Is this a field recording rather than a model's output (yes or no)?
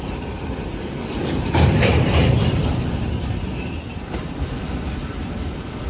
no